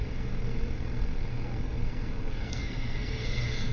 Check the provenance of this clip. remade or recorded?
remade